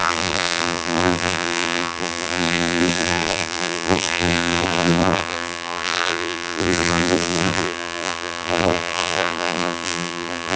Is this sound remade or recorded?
remade